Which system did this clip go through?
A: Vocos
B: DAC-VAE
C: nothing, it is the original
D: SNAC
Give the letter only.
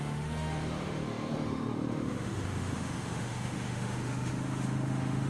B